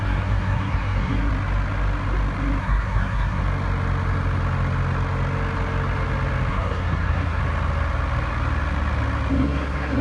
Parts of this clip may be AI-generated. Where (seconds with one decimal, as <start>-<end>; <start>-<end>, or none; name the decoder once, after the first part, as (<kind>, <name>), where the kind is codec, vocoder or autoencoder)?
0.0-1.3 (codec, SNAC); 2.6-3.4; 6.5-7.4; 9.3-10.0

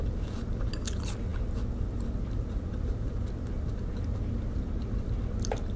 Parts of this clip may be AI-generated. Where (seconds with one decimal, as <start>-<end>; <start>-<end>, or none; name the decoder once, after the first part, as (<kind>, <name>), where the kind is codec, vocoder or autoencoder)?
none

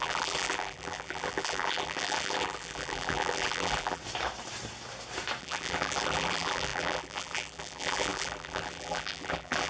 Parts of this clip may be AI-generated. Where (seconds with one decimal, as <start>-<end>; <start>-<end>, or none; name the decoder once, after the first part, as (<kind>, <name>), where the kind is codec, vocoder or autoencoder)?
0.0-4.0 (vocoder, BigVGAN v2); 5.4-9.7

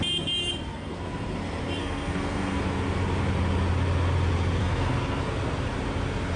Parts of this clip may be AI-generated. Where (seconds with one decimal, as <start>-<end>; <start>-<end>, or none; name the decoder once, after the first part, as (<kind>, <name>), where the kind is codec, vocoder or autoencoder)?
0.7-1.4 (codec, SNAC); 1.8-2.6; 4.6-5.2

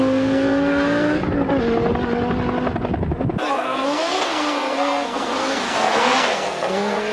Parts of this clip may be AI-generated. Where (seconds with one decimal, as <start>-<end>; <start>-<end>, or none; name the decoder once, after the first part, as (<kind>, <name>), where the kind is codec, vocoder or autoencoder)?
0.0-1.2 (codec, SNAC); 3.5-7.1

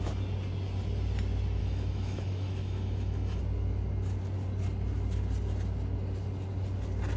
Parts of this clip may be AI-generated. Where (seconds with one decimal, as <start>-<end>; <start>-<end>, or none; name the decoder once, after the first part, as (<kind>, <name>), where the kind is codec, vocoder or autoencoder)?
1.6-3.4 (autoencoder, DAC-VAE)

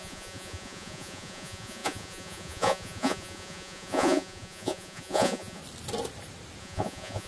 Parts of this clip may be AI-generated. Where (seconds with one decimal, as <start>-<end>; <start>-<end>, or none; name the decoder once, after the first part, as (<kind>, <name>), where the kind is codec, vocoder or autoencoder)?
0.0-5.6 (vocoder, Vocos); 6.6-7.3